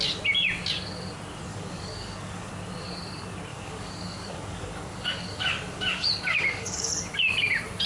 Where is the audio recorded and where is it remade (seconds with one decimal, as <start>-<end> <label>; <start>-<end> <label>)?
0.0-1.5 recorded; 1.5-2.5 remade; 2.5-3.5 recorded; 3.5-6.9 remade; 6.9-7.9 recorded